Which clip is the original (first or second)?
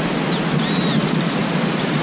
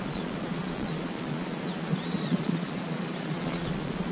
first